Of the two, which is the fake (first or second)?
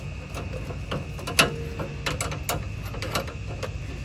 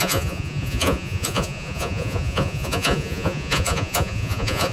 second